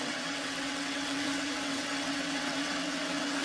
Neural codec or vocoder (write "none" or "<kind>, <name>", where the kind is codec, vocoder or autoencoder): vocoder, WaveNeXt